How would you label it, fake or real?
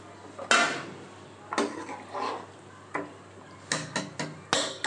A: real